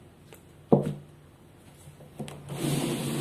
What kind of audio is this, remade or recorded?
recorded